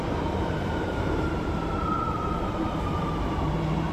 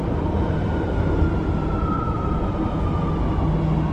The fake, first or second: first